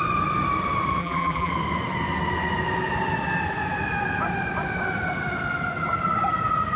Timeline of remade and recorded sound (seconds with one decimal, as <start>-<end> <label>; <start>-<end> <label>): 0.0-1.0 recorded; 1.0-1.5 remade; 1.5-6.8 recorded